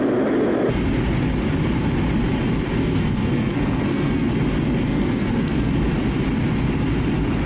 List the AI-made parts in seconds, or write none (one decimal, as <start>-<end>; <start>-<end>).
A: 2.8-4.3; 4.9-5.7